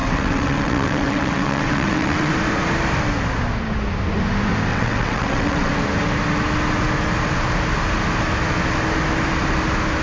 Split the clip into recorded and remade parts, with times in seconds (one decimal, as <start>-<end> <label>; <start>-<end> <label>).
0.0-2.3 remade; 2.3-4.7 recorded; 4.7-5.7 remade; 5.7-10.0 recorded